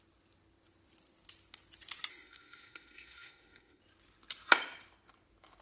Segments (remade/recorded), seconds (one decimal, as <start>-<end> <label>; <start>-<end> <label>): 0.0-2.1 recorded; 2.1-3.8 remade; 3.8-5.6 recorded